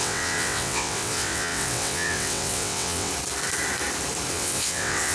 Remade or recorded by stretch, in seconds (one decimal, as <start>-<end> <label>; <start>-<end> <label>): 0.0-3.1 remade; 3.1-4.3 recorded; 4.3-5.1 remade